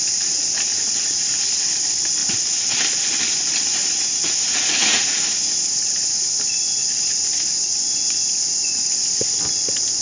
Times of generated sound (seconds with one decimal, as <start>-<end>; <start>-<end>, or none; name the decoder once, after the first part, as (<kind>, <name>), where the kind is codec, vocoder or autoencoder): 3.8-5.4 (vocoder, Vocos)